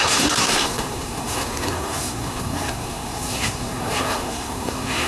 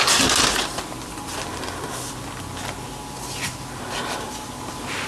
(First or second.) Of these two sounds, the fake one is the first